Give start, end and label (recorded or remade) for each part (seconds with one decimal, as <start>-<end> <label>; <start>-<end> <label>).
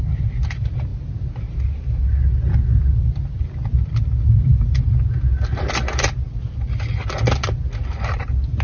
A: 0.0-8.6 recorded